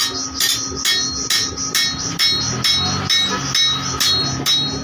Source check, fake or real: real